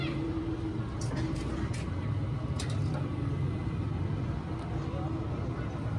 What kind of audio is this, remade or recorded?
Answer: recorded